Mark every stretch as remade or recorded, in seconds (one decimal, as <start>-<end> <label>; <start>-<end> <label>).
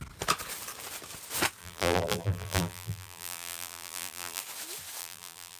0.0-1.6 recorded; 1.6-4.4 remade; 4.4-5.0 recorded; 5.0-5.6 remade